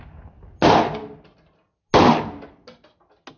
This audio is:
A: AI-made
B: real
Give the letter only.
B